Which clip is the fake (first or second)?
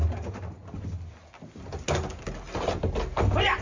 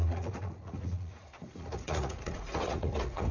second